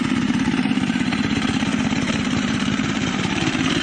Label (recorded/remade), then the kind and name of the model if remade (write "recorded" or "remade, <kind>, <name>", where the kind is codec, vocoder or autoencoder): remade, vocoder, BigVGAN v2